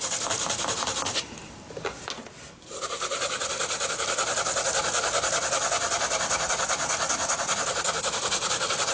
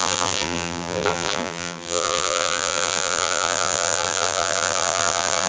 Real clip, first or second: first